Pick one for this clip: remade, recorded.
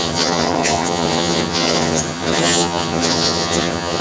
remade